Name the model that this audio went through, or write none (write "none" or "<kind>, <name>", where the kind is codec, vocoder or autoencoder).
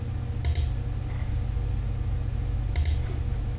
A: none